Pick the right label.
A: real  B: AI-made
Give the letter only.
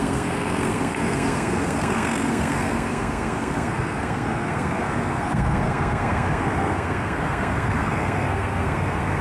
B